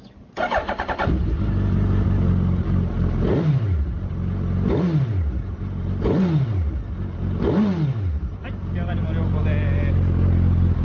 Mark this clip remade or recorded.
recorded